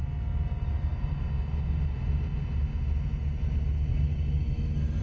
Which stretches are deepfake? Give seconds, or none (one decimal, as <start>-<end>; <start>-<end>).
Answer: 3.9-5.0